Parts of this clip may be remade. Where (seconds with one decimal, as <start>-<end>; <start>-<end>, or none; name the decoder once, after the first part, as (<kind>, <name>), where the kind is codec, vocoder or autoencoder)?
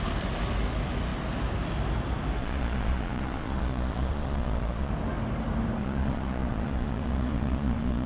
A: 2.4-4.9 (vocoder, Vocos); 5.8-8.1